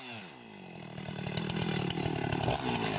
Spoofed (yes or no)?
no